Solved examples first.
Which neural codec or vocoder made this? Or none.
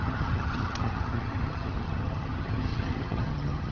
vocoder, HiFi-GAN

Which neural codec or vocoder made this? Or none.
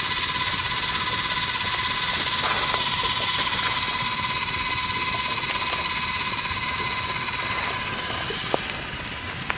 none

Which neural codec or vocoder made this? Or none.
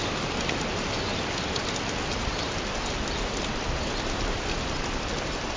none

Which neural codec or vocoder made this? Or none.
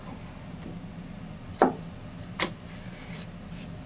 none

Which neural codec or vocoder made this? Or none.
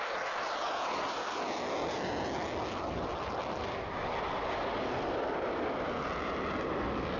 none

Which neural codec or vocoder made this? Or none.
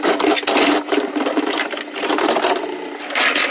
none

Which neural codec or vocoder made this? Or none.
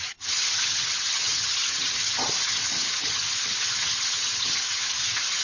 vocoder, HiFi-GAN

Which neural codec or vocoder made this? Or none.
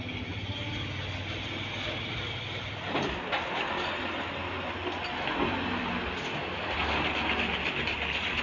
none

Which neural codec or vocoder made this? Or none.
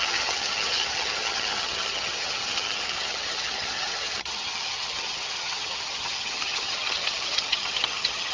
vocoder, HiFi-GAN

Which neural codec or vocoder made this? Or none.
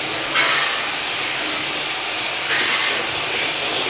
none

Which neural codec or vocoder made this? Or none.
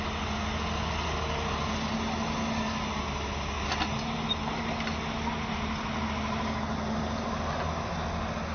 none